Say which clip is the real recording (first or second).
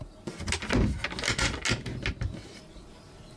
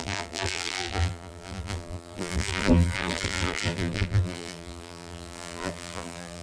first